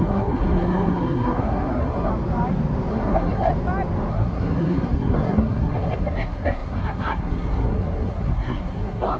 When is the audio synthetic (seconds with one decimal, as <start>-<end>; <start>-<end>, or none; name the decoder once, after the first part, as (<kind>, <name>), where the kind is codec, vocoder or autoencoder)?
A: 0.0-2.1 (codec, SNAC); 2.9-3.5; 4.1-9.2